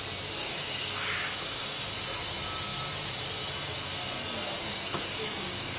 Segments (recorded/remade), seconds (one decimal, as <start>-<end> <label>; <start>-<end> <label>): 0.0-0.4 recorded; 0.4-1.8 remade; 1.8-4.6 recorded; 4.6-5.8 remade